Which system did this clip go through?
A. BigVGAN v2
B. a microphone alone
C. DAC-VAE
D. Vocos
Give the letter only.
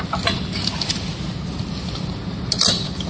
B